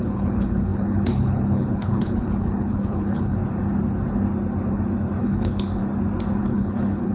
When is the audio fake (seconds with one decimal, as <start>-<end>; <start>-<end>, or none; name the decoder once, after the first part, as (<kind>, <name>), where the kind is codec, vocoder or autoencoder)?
0.0-3.4 (codec, HILCodec); 5.2-5.8; 6.4-7.1